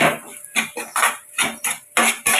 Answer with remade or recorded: remade